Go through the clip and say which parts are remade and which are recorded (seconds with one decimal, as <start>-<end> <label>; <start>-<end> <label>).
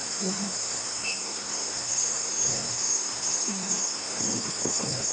0.0-5.1 remade